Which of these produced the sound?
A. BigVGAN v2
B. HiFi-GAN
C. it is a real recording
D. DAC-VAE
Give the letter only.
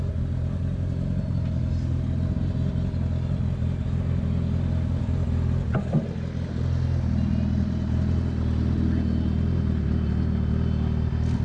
C